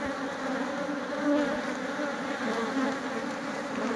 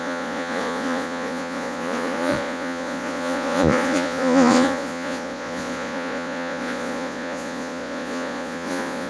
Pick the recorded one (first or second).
first